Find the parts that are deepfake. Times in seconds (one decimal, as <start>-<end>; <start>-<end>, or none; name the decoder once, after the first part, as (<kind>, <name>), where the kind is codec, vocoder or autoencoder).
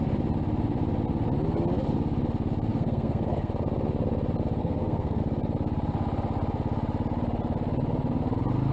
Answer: 2.7-3.5 (codec, SNAC); 4.6-5.2